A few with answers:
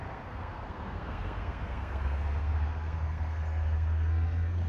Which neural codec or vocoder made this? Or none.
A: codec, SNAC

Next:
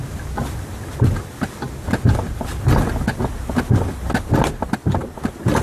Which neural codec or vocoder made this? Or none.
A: none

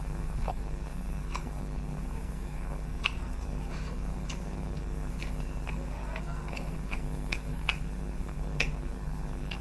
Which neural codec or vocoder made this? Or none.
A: codec, SNAC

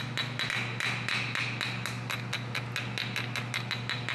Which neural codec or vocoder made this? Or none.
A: none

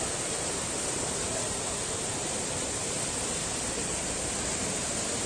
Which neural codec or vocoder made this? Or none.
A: vocoder, BigVGAN v2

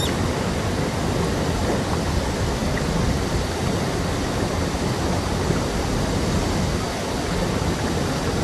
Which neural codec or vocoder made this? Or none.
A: none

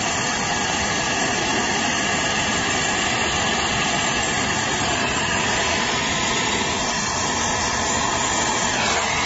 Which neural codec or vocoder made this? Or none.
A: none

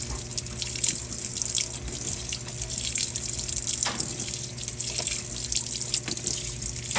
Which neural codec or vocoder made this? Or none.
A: none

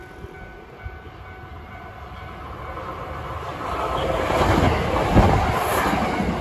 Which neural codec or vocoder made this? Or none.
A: none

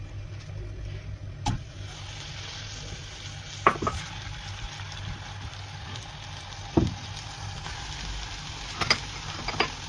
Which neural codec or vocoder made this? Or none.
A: none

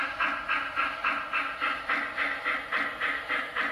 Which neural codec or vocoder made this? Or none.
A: none